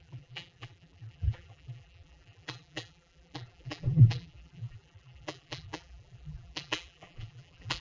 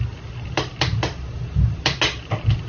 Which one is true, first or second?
second